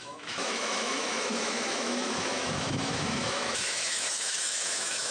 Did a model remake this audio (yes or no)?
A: yes